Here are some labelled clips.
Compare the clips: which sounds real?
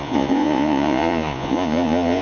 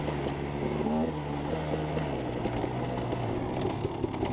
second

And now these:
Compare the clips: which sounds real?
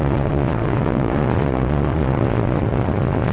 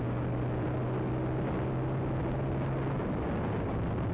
second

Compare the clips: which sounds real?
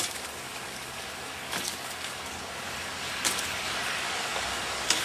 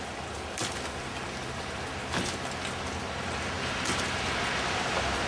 second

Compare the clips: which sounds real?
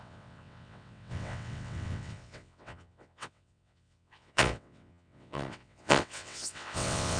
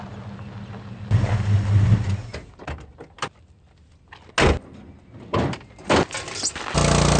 second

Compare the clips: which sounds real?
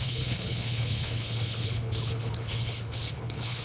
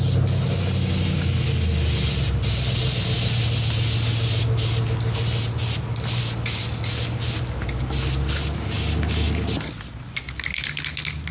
second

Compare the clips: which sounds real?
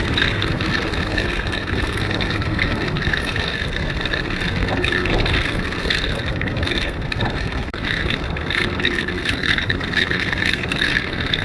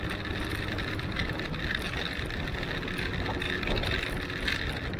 second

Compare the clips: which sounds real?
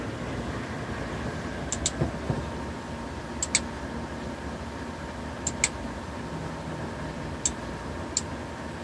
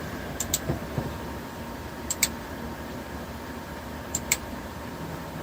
first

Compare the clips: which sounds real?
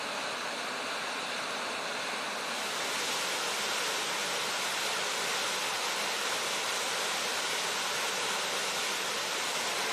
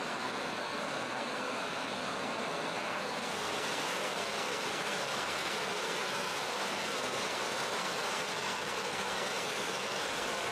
first